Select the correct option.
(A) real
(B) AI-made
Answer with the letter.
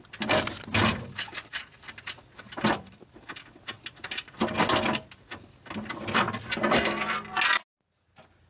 A